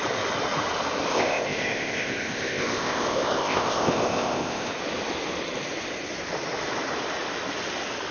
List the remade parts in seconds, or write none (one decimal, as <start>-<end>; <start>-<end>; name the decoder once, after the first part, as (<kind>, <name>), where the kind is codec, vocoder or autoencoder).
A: 1.1-4.7 (codec, ZipCodec)